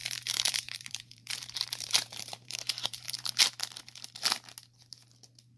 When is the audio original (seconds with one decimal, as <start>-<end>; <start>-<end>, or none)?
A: 3.4-5.6